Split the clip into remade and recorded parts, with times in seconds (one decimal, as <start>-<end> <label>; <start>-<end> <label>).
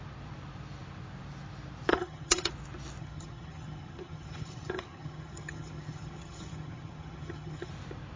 0.0-1.9 recorded; 1.9-2.5 remade; 2.5-3.0 recorded; 3.0-7.7 remade; 7.7-8.2 recorded